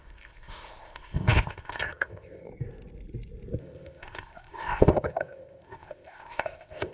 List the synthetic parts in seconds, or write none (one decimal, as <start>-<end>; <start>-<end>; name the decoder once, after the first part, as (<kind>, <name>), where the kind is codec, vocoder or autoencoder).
0.0-2.5 (codec, ZipCodec); 3.6-6.9